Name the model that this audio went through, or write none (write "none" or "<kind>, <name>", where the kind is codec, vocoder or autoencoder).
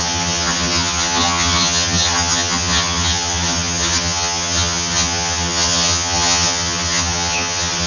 vocoder, HiFi-GAN